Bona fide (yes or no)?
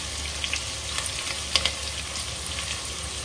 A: yes